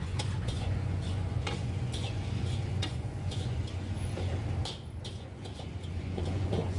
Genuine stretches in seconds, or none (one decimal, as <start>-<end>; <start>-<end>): 4.3-5.1